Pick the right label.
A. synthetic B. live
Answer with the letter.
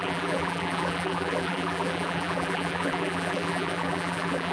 A